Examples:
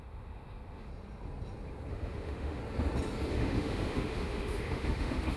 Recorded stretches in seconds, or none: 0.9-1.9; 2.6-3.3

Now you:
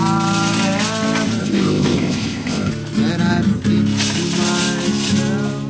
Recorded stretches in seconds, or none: 0.0-1.4; 2.7-5.7

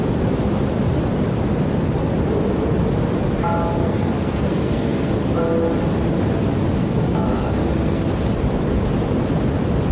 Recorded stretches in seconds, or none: 0.0-3.8; 5.1-6.8; 8.0-9.9

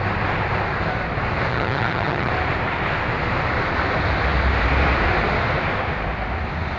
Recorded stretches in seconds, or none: 0.0-1.5; 2.3-6.8